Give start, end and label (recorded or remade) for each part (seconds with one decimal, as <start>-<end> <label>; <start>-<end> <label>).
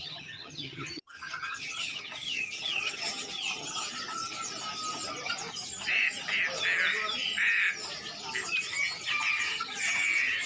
0.0-4.2 remade; 4.2-9.4 recorded; 9.4-10.5 remade